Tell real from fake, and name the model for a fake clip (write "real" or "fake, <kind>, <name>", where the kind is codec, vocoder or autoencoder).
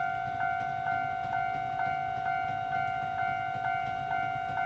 real